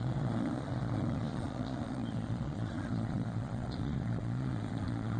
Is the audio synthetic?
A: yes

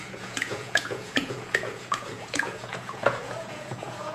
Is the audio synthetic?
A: yes